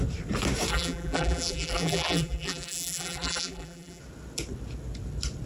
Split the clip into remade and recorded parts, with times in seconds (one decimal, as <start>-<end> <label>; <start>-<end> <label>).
0.0-0.7 recorded; 0.7-4.0 remade; 4.0-5.5 recorded